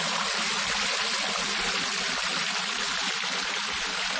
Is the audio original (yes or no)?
yes